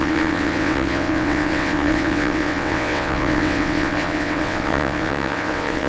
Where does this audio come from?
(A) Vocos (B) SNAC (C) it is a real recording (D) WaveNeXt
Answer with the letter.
D